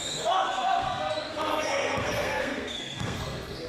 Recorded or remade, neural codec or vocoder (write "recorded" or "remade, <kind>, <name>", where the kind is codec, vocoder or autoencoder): remade, codec, SNAC